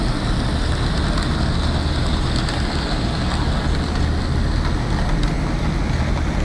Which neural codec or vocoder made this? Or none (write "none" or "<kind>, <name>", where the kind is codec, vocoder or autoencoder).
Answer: none